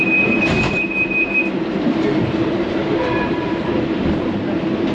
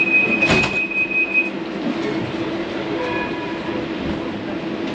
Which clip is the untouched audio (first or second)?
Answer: second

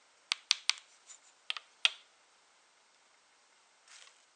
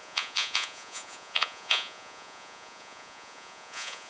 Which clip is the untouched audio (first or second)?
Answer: first